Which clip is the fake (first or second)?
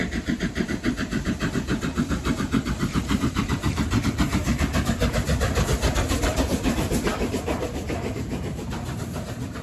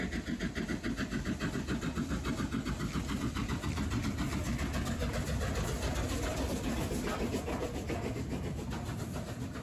first